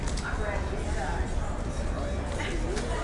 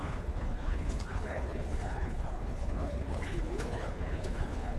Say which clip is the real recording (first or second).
first